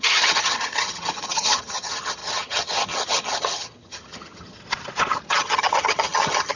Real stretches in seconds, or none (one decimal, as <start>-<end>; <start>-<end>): 4.6-5.3